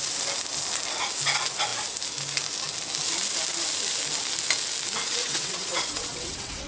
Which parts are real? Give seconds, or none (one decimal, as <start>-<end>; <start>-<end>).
0.0-5.2